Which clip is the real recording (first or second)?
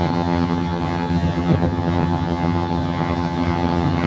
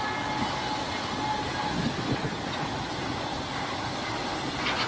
second